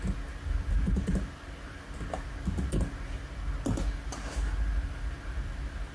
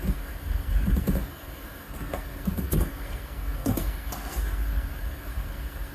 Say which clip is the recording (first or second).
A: first